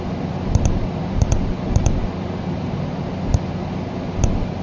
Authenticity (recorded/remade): recorded